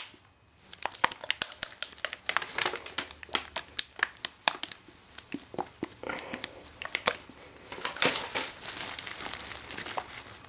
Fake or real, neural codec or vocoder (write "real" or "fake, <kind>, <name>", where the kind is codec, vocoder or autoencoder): real